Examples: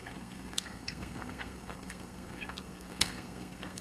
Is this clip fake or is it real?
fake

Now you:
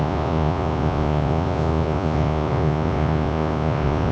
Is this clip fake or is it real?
fake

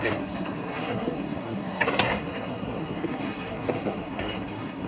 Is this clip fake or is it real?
fake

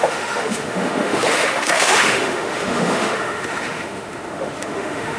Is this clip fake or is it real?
fake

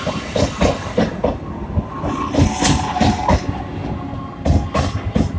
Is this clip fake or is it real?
real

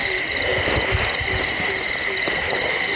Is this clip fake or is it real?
real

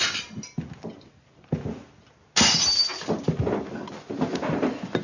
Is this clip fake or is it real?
real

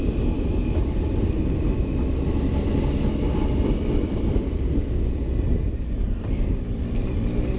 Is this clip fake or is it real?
real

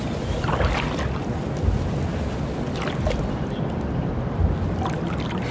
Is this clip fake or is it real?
real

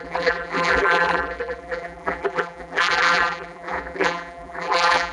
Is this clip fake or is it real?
fake